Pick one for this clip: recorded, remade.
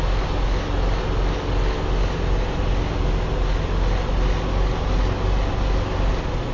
recorded